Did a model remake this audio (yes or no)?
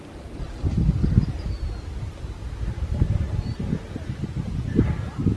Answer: no